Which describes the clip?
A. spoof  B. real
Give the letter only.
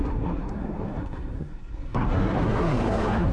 A